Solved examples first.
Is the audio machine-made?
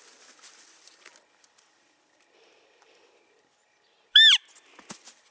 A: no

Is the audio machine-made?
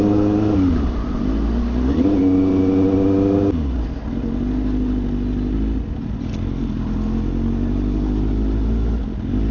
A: no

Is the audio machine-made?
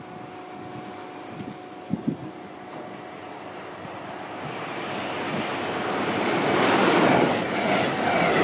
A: no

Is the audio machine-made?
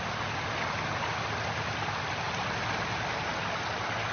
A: no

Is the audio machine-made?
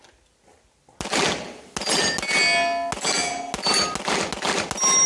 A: no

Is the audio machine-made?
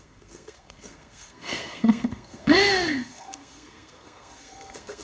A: yes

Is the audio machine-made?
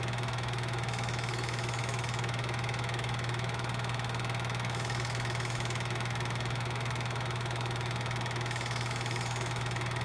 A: yes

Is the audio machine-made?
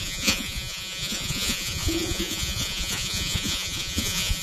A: yes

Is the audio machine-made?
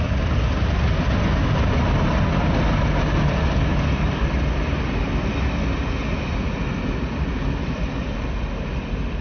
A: no